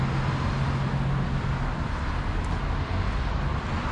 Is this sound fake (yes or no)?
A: no